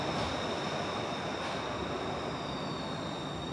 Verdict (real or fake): real